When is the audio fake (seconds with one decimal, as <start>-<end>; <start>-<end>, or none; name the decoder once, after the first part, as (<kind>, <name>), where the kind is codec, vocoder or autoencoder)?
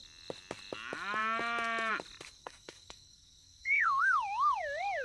2.4-4.0 (codec, SNAC)